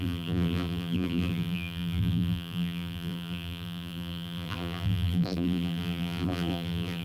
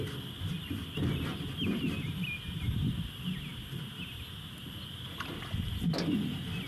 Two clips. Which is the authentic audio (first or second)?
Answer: second